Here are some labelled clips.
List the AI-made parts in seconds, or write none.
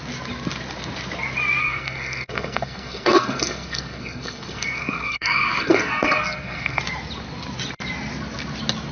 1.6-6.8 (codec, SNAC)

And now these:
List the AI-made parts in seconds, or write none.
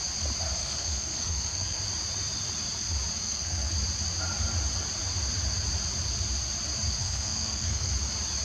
0.6-1.8 (codec, SNAC); 3.2-3.7; 7.0-7.9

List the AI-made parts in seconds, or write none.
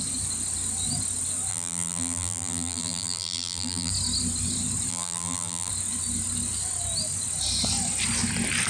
1.5-3.9 (vocoder, BigVGAN v2); 4.9-5.7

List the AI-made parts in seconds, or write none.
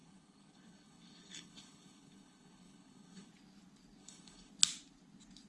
0.0-3.3 (codec, HILCodec); 4.0-4.5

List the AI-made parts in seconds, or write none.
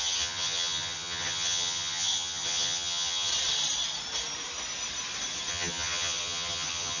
0.0-3.3 (vocoder, HiFi-GAN); 5.5-7.0